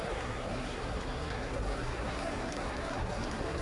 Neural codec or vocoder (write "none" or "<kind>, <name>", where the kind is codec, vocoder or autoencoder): codec, SNAC